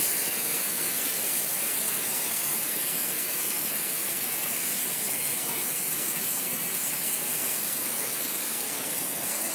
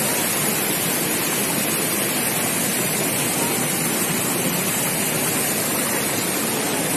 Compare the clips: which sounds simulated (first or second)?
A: first